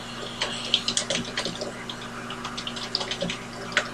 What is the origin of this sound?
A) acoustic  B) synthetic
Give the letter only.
A